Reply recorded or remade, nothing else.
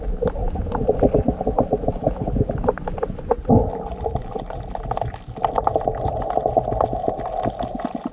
recorded